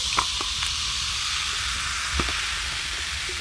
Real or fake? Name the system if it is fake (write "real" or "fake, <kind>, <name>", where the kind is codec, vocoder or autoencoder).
real